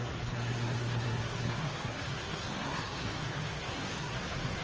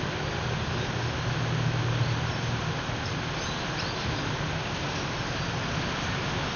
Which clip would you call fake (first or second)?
first